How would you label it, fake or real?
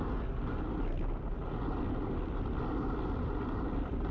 real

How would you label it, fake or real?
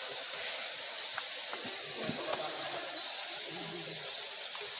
real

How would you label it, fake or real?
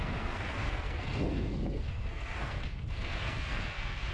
fake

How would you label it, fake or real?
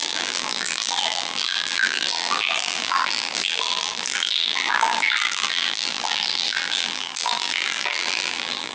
fake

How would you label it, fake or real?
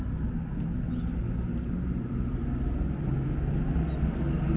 real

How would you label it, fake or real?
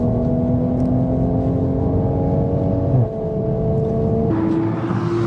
real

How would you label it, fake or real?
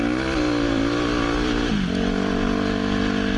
real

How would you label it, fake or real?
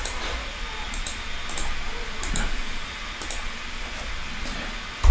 real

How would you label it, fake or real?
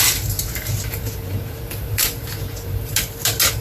fake